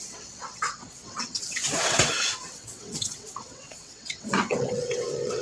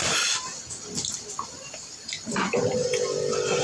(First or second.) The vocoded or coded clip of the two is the first